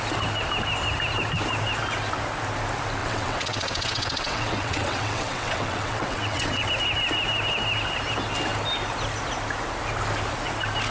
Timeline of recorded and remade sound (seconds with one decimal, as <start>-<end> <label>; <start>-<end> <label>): 0.0-3.0 recorded; 3.0-6.7 remade; 6.7-10.9 recorded